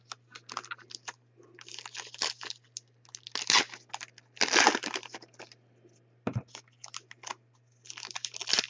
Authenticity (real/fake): real